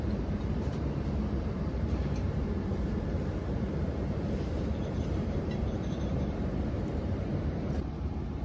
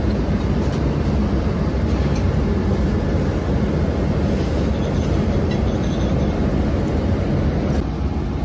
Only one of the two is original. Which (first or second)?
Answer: second